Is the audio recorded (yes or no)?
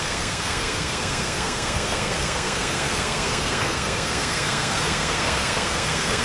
no